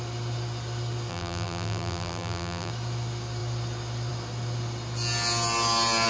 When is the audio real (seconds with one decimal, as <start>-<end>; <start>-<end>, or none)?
0.0-1.1; 2.7-6.1